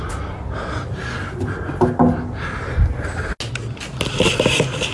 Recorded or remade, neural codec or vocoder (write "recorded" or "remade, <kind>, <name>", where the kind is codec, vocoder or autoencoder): recorded